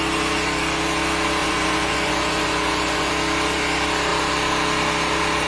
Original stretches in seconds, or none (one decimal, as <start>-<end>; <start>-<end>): 0.0-1.4; 3.1-5.5